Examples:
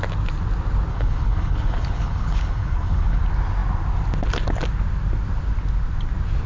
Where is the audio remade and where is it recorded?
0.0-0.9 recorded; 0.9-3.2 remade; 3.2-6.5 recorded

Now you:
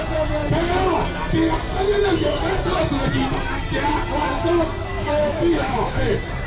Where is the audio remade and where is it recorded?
0.0-4.9 recorded; 4.9-6.0 remade; 6.0-6.5 recorded

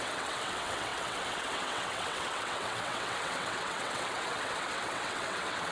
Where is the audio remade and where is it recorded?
0.0-5.7 remade

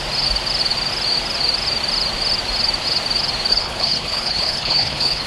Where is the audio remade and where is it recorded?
0.0-3.5 recorded; 3.5-5.3 remade

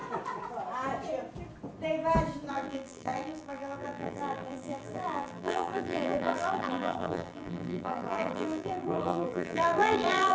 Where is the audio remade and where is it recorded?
0.0-2.5 recorded; 2.5-10.3 remade

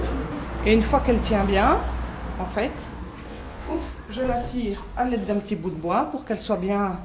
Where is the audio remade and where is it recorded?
0.0-3.3 recorded; 3.3-3.9 remade; 3.9-7.0 recorded